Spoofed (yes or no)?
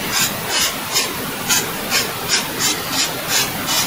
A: no